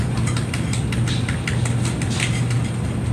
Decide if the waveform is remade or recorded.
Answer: recorded